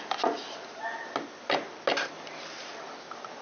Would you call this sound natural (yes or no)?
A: yes